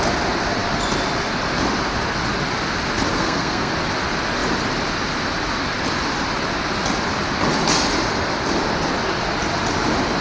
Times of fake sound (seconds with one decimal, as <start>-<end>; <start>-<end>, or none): 3.1-3.7

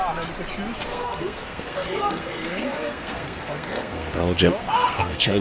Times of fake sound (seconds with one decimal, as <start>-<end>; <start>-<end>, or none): 0.9-4.1; 4.6-5.4

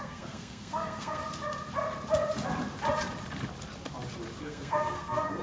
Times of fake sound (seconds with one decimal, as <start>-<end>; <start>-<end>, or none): 0.0-1.2; 4.4-5.4

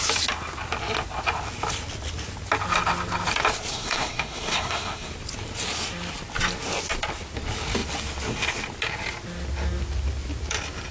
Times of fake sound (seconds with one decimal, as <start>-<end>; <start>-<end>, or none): 3.7-5.1

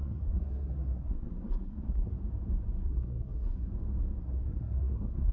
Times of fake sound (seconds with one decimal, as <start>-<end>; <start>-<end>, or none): 0.0-2.2; 2.8-3.7; 4.2-5.3